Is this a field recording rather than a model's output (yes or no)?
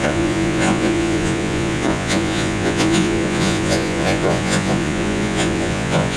no